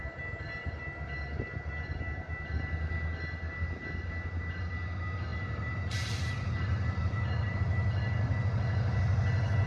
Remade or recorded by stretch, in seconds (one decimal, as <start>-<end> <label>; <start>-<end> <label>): 0.0-5.3 recorded; 5.3-7.6 remade; 7.6-9.7 recorded